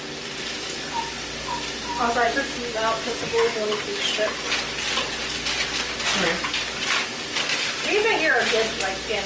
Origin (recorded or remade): recorded